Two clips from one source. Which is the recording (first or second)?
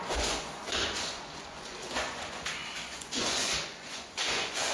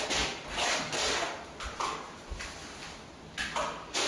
second